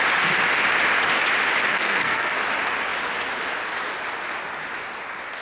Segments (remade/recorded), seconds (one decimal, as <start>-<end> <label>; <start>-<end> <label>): 0.0-1.7 recorded; 1.7-2.3 remade; 2.3-5.4 recorded